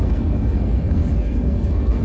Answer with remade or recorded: remade